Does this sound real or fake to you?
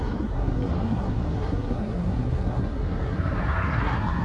fake